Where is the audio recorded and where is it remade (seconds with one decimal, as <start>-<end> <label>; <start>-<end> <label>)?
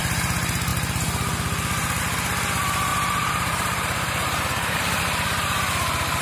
0.0-2.9 recorded; 2.9-5.0 remade; 5.0-6.2 recorded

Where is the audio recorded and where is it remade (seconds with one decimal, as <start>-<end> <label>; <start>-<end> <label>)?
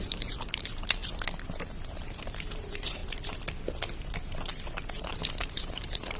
0.0-1.0 remade; 1.0-1.9 recorded; 1.9-3.0 remade; 3.0-5.0 recorded; 5.0-6.2 remade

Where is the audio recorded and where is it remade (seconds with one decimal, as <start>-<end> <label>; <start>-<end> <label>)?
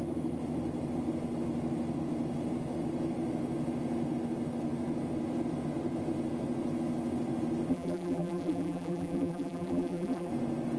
0.0-7.7 recorded; 7.7-10.3 remade; 10.3-10.8 recorded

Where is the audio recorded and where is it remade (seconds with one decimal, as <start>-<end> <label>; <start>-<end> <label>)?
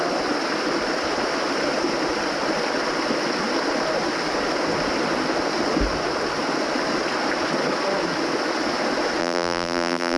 0.0-9.2 recorded; 9.2-10.2 remade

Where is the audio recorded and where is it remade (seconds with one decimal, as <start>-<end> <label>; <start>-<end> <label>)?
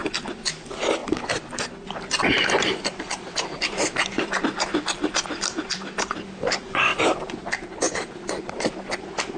0.0-9.4 remade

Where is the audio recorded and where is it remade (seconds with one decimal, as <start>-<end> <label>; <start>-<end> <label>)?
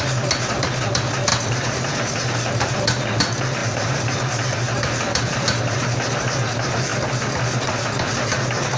0.0-1.3 recorded; 1.3-2.7 remade; 2.7-3.6 recorded; 3.6-6.2 remade; 6.2-8.8 recorded